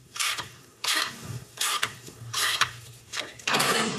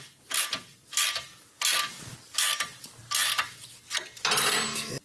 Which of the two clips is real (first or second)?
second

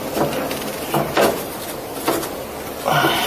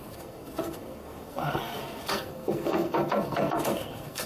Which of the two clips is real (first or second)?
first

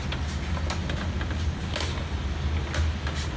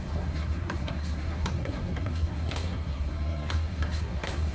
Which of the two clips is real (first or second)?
first